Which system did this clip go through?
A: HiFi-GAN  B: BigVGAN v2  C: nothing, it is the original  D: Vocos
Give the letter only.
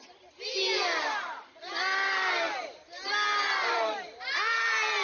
C